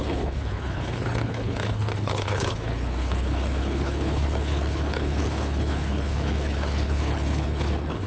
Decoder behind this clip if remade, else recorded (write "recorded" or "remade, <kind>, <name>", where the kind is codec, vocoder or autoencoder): remade, codec, HILCodec